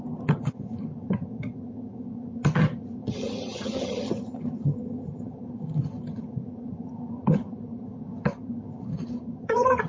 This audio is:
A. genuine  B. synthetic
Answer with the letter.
B